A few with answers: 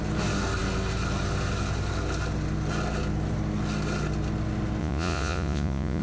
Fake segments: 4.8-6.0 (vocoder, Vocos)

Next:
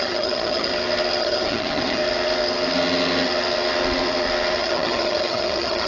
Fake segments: 0.0-0.7 (vocoder, HiFi-GAN); 1.2-2.0; 4.6-5.9

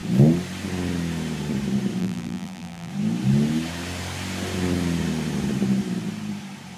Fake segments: 2.0-2.9 (vocoder, BigVGAN v2)